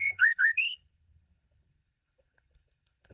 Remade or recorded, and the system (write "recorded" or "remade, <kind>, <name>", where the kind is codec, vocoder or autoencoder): remade, codec, HILCodec